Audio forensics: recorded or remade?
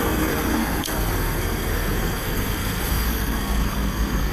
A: remade